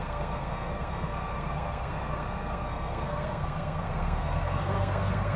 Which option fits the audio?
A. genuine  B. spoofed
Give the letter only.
B